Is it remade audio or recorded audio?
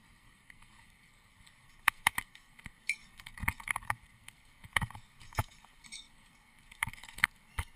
remade